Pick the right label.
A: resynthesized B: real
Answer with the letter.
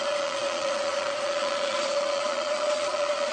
A